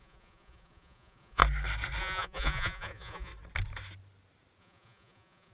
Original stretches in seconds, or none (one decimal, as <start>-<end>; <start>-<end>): 1.4-2.0; 3.3-4.6